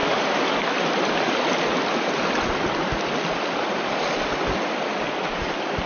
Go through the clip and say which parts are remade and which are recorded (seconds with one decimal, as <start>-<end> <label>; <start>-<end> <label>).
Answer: 0.0-5.9 recorded